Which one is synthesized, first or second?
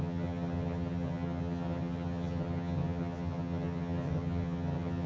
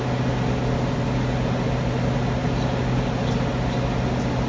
first